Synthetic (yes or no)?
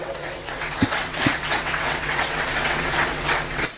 yes